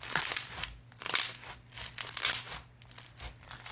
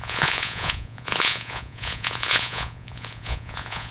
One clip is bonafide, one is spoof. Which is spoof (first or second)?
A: second